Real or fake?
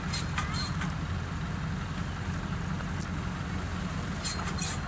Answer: real